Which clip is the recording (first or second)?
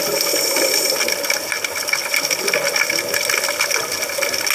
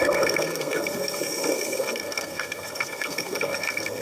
first